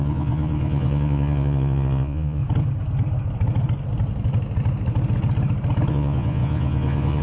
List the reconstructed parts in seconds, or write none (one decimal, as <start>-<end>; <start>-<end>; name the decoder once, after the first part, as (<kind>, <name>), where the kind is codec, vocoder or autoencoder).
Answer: 0.0-2.4 (vocoder, Vocos); 5.9-7.2